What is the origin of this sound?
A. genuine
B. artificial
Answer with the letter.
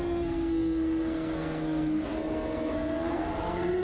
B